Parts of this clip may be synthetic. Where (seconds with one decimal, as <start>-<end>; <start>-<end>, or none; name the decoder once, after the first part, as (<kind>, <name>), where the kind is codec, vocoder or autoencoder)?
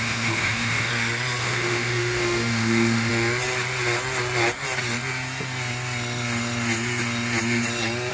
0.0-0.9 (autoencoder, DAC-VAE); 1.4-3.1